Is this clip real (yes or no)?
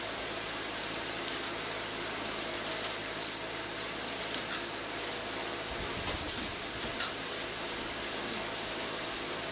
yes